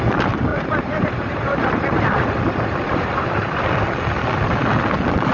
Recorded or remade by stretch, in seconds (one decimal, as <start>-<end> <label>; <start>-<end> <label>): 0.0-0.5 recorded; 0.5-3.7 remade; 3.7-5.3 recorded